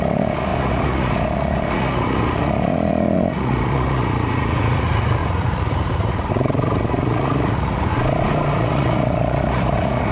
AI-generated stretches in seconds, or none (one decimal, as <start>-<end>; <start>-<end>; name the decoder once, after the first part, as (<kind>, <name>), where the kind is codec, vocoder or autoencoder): 0.0-7.9 (vocoder, Vocos); 8.5-10.1